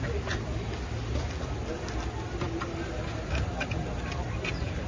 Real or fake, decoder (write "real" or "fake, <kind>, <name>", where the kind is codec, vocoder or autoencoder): real